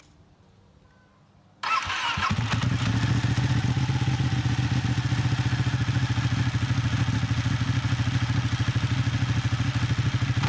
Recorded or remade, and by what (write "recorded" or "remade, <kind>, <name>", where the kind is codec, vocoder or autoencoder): recorded